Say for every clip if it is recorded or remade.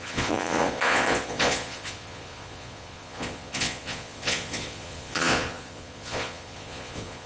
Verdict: remade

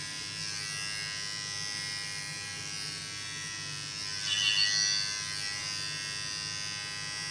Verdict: recorded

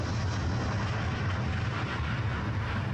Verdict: recorded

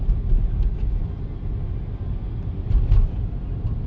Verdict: recorded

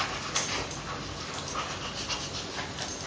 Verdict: recorded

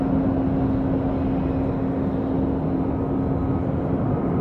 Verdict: recorded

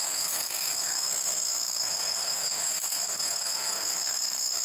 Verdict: remade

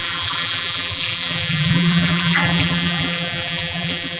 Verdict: remade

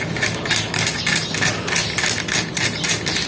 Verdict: recorded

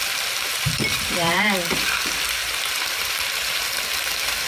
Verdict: remade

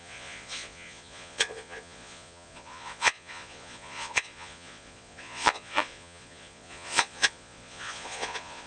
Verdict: remade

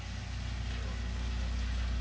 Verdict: recorded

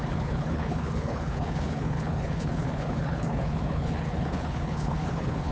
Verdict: remade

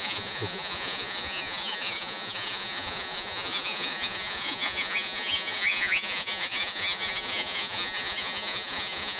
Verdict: remade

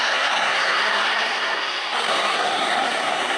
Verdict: remade